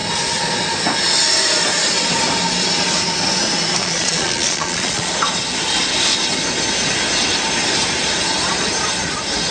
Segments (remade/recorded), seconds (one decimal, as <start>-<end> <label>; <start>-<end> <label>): 0.0-3.8 recorded; 3.8-5.1 remade; 5.1-9.5 recorded